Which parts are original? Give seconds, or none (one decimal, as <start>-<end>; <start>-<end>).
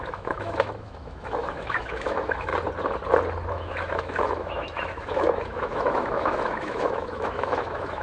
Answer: 2.5-3.5